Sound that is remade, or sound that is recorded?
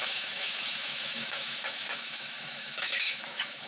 remade